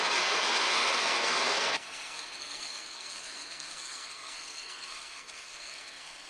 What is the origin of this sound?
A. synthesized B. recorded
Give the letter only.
A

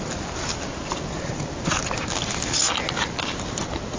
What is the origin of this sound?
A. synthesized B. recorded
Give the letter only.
B